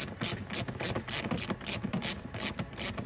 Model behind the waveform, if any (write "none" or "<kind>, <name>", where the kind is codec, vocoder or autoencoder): none